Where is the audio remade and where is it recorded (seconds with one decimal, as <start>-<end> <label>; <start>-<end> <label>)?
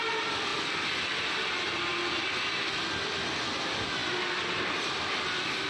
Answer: 0.0-5.7 recorded